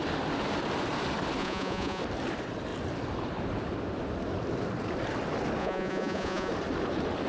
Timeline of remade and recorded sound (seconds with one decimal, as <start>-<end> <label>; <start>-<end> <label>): 0.0-1.4 recorded; 1.4-2.0 remade; 2.0-5.6 recorded; 5.6-6.5 remade; 6.5-7.3 recorded